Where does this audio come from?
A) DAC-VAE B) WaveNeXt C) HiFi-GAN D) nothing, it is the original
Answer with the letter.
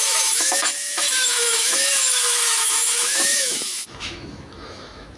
A